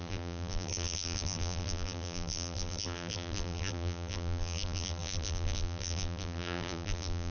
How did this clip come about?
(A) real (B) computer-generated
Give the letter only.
B